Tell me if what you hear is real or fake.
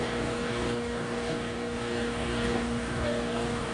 fake